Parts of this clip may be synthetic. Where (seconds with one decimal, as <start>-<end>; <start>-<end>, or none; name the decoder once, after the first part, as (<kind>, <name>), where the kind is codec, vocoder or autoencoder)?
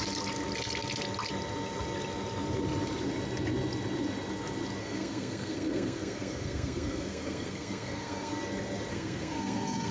4.8-8.3 (codec, SNAC); 8.9-9.9